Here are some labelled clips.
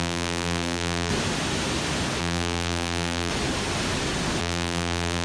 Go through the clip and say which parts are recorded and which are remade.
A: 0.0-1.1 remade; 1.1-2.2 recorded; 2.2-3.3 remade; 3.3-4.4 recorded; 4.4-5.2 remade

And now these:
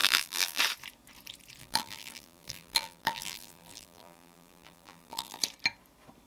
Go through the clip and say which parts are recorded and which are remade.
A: 0.0-0.6 remade; 0.6-1.6 recorded; 1.6-5.4 remade; 5.4-6.3 recorded

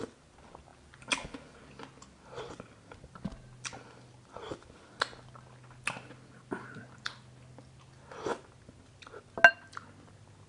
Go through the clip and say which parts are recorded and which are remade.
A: 0.0-0.7 recorded; 0.7-1.7 remade; 1.7-10.5 recorded

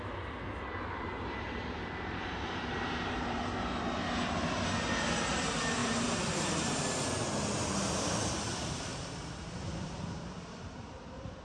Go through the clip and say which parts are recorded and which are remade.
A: 0.0-0.9 recorded; 0.9-3.4 remade; 3.4-5.8 recorded; 5.8-6.8 remade; 6.8-8.9 recorded; 8.9-11.4 remade

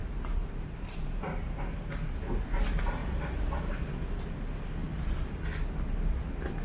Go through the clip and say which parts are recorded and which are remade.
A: 0.0-1.9 remade; 1.9-3.0 recorded; 3.0-3.6 remade; 3.6-4.8 recorded; 4.8-5.3 remade; 5.3-6.6 recorded